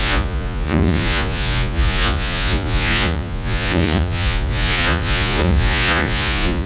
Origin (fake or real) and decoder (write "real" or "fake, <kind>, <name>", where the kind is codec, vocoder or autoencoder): fake, vocoder, Vocos